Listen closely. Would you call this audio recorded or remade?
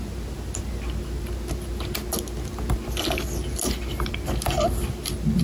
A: recorded